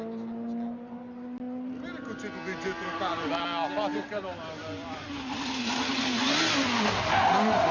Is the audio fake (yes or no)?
no